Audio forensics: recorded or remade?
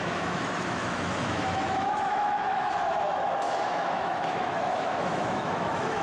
remade